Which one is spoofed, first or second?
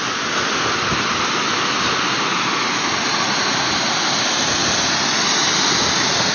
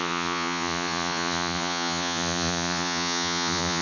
second